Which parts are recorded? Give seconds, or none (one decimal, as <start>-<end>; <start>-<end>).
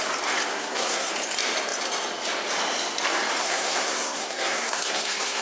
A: 0.0-0.5; 1.1-3.4